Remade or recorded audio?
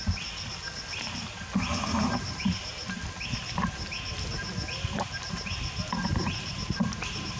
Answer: recorded